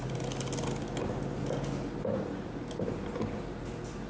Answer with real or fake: real